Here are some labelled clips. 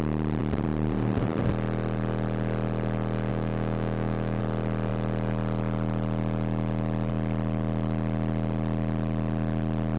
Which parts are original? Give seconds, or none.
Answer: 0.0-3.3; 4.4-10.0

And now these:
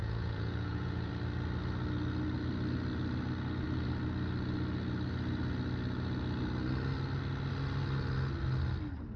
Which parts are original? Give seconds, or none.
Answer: 1.1-9.2